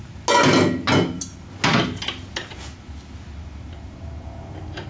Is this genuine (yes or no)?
yes